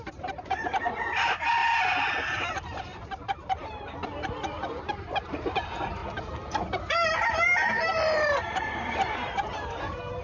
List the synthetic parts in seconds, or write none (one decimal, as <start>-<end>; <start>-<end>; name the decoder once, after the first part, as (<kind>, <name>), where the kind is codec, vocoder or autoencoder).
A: 0.0-1.6 (vocoder, BigVGAN v2); 2.6-6.0; 7.3-10.2